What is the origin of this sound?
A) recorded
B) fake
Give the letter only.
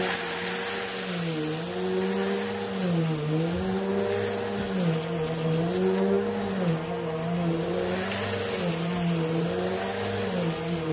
A